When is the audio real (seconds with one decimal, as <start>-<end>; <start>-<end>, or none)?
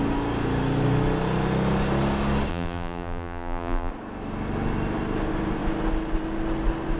0.0-2.5; 3.9-7.0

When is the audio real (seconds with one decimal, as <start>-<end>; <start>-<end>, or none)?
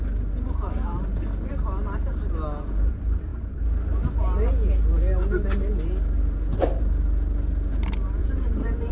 0.0-8.2